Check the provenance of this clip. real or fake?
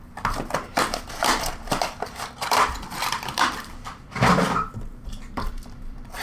fake